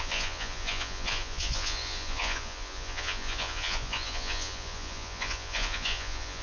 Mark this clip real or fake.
fake